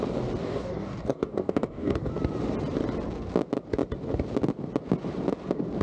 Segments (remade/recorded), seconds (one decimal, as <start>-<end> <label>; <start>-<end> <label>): 0.0-0.4 recorded; 0.4-2.1 remade; 2.1-5.8 recorded